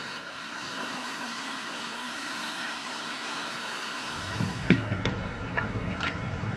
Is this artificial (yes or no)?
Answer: yes